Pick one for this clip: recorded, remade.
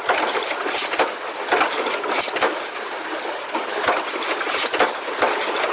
recorded